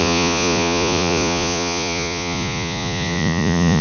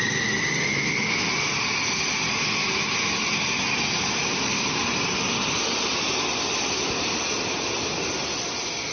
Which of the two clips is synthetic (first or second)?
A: first